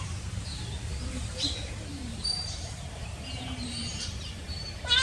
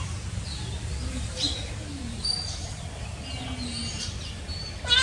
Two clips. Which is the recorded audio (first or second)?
second